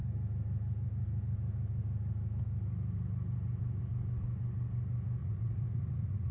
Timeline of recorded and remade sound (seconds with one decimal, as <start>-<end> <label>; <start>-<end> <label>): 0.0-5.2 recorded; 5.2-6.3 remade